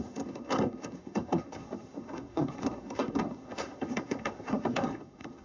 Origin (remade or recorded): remade